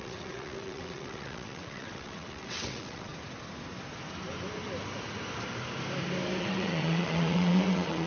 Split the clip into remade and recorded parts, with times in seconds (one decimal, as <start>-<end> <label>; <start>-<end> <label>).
0.0-3.1 remade; 3.1-6.4 recorded; 6.4-8.1 remade